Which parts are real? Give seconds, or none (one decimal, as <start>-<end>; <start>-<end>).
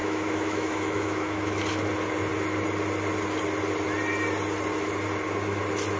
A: 1.6-6.0